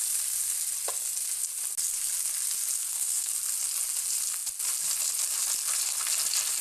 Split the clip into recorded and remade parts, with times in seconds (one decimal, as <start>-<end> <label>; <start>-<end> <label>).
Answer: 0.0-2.8 recorded; 2.8-3.3 remade; 3.3-6.6 recorded